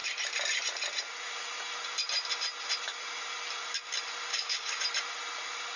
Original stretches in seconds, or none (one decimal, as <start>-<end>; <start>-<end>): 0.0-4.3; 4.8-5.8

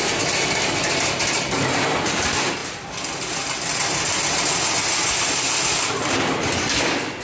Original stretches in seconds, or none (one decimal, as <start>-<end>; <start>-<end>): 0.0-7.2

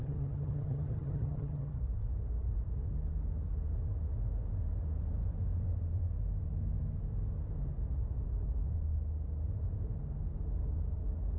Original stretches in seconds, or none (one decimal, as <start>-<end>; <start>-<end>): 1.8-11.4

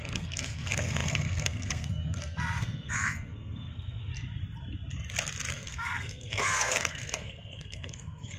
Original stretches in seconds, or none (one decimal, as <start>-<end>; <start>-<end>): 4.1-5.5

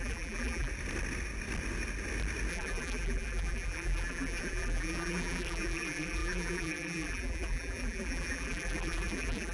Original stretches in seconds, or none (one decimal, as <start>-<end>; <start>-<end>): 0.7-2.5